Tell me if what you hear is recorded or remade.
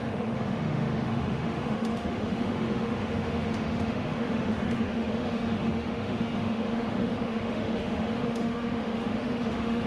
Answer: remade